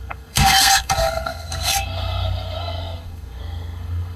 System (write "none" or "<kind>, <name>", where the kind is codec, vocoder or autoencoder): codec, SNAC